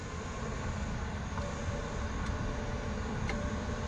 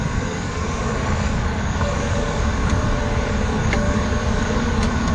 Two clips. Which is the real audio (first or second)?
first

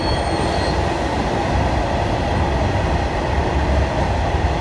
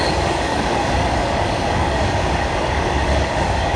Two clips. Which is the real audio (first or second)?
first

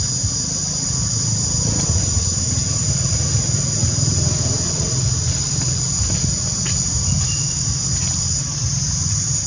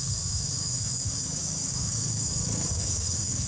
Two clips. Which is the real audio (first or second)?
first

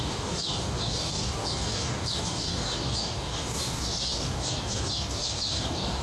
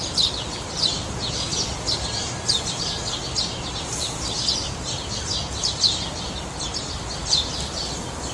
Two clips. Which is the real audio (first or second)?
second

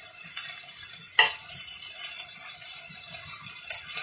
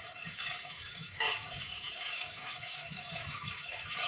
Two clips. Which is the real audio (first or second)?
first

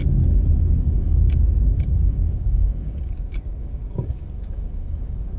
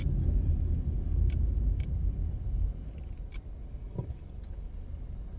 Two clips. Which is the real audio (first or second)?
second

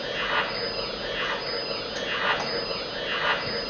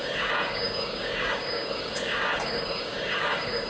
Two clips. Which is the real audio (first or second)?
first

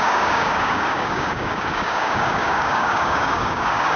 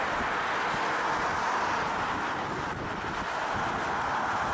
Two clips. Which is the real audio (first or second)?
second